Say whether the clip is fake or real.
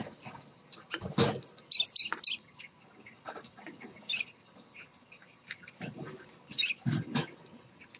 real